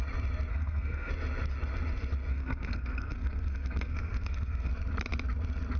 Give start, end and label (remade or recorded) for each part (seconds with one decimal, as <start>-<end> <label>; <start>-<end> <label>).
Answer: 0.0-0.5 recorded; 0.5-1.1 remade; 1.1-2.3 recorded; 2.3-4.7 remade; 4.7-5.8 recorded